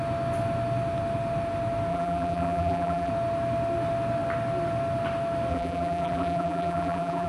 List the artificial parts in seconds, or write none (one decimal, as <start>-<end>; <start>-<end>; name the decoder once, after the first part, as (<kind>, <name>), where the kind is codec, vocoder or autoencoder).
1.9-3.1 (vocoder, BigVGAN v2); 5.5-7.3